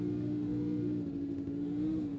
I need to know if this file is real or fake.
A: fake